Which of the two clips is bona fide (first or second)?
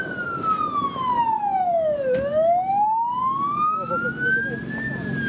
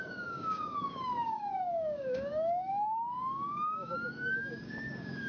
first